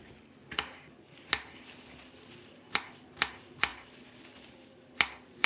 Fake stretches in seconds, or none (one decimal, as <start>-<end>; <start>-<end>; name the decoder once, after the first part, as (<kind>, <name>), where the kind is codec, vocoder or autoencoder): none